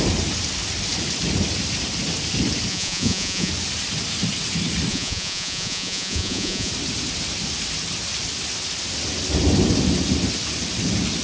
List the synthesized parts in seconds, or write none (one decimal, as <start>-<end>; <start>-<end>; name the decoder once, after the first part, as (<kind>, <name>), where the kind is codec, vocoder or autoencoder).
2.7-3.5 (vocoder, Vocos); 4.9-6.7